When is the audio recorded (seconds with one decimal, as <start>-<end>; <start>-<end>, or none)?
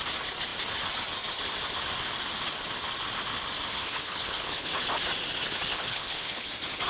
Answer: 0.0-3.7; 4.7-5.7; 6.5-6.9